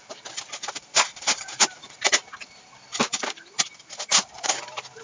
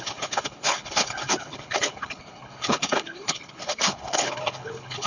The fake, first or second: second